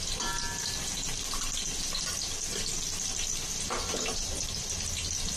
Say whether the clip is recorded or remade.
recorded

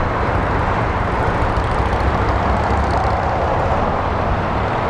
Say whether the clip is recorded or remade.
remade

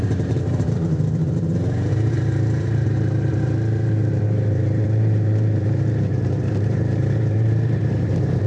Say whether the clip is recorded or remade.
remade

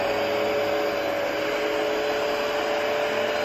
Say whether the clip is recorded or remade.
recorded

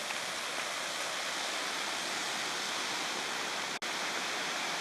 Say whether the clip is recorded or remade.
recorded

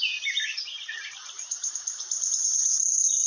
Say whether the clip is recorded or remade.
remade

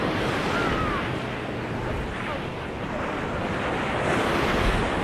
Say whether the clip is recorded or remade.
recorded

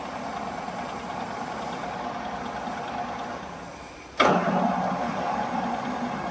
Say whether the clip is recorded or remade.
remade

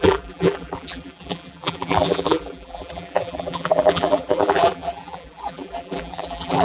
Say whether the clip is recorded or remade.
remade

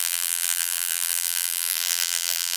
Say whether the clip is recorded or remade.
remade